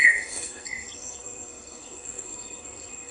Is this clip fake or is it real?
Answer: fake